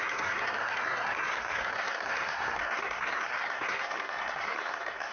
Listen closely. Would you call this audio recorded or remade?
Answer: remade